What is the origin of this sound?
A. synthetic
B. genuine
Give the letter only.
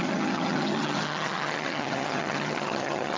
A